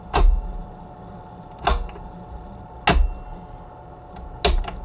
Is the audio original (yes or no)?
yes